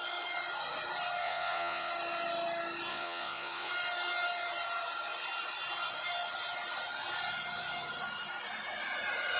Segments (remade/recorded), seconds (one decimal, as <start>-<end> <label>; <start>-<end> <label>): 0.0-1.2 recorded; 1.2-1.9 remade; 1.9-2.9 recorded; 2.9-3.7 remade; 3.7-9.4 recorded